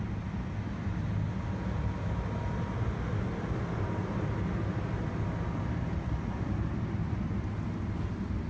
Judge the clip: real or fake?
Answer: real